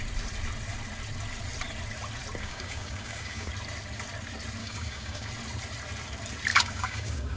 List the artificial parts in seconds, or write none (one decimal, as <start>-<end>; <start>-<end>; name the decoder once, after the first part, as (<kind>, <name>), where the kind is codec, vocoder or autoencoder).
2.4-3.5 (codec, DAC); 4.6-5.3; 6.5-7.4